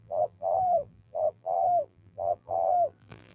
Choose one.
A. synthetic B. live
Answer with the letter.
A